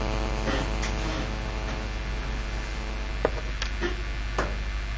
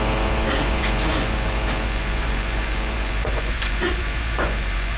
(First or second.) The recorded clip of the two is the first